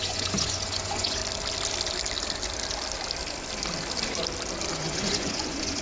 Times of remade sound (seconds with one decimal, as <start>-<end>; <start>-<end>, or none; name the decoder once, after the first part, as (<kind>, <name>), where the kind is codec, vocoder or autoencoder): 0.0-1.2 (vocoder, Vocos); 4.7-5.8